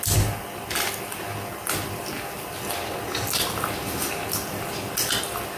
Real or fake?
real